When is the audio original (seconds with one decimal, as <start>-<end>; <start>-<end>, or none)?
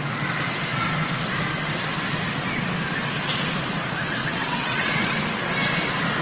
0.0-4.2; 5.2-6.2